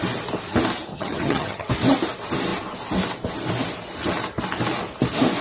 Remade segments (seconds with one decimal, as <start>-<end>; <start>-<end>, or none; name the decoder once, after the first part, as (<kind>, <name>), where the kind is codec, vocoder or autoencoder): 0.9-1.7 (vocoder, HiFi-GAN)